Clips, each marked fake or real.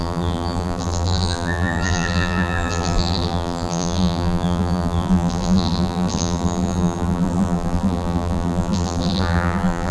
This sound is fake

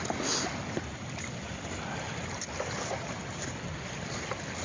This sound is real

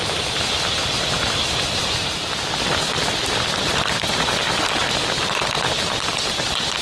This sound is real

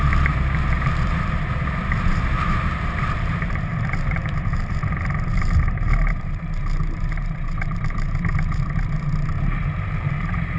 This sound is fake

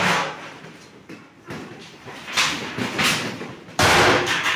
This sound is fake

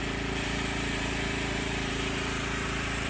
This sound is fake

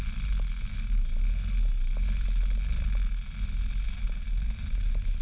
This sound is real